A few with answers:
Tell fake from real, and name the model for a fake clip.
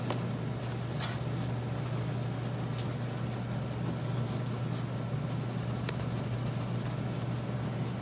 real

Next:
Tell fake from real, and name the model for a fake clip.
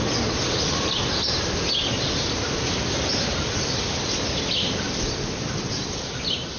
real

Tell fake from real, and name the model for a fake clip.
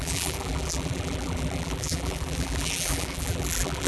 fake, vocoder, BigVGAN v2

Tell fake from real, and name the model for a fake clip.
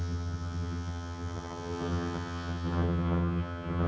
fake, vocoder, HiFi-GAN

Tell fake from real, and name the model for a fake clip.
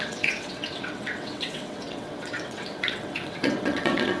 fake, vocoder, WaveNeXt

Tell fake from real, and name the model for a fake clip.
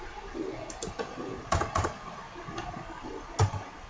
real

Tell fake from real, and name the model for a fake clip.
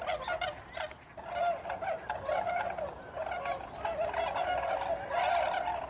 real